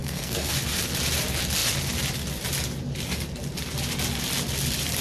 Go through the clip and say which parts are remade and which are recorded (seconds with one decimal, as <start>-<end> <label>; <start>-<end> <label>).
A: 0.0-0.5 remade; 0.5-5.0 recorded